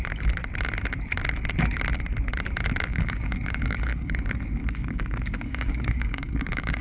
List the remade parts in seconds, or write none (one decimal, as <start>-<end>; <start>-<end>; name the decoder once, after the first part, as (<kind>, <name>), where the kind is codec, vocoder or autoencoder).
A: 2.9-6.8 (codec, DAC)

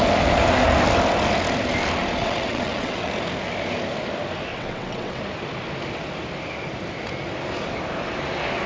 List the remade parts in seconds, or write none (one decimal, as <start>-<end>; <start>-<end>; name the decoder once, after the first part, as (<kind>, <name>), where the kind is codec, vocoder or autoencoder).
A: 2.2-3.1 (vocoder, WaveNeXt); 4.5-5.2

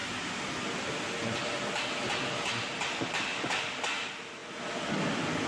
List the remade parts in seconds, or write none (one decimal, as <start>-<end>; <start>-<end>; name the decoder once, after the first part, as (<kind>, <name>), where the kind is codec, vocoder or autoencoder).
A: none

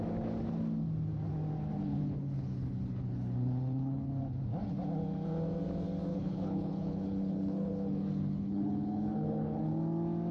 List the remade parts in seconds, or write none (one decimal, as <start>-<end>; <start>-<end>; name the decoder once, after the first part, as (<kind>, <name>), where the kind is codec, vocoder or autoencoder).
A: 1.9-4.2 (codec, HILCodec); 6.1-9.7

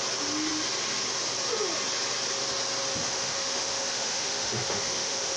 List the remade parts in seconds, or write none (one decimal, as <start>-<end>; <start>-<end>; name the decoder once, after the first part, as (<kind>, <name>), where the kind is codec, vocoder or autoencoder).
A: 3.0-5.4 (autoencoder, DAC-VAE)

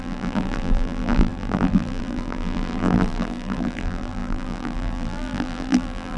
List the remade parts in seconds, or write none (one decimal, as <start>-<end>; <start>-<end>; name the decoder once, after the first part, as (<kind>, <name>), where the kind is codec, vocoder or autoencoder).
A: 0.0-6.2 (vocoder, BigVGAN v2)

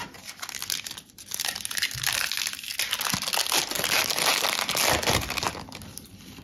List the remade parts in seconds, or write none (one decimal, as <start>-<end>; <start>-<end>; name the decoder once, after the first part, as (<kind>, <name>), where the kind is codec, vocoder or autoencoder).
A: none

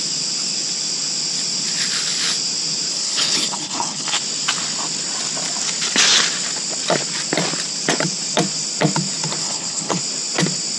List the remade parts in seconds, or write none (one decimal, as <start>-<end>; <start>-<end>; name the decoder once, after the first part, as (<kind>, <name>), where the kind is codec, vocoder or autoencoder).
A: 2.9-4.2 (codec, HILCodec); 9.4-10.0